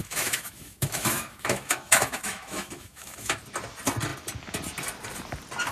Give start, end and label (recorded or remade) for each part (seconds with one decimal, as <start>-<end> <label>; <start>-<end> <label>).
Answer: 0.0-3.4 remade; 3.4-5.7 recorded